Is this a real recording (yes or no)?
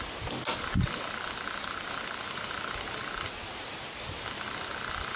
yes